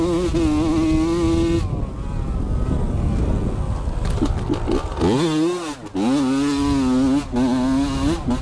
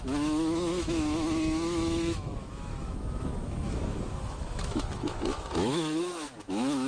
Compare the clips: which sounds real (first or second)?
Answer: first